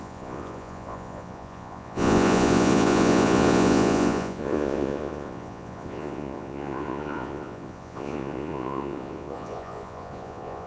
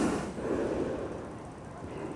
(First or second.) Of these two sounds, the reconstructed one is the first